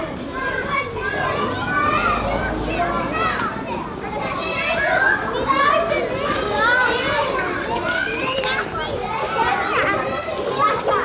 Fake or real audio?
real